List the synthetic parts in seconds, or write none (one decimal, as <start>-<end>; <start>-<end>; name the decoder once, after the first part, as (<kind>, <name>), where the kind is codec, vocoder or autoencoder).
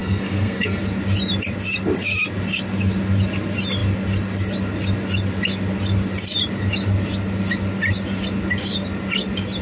0.0-0.8 (codec, SNAC)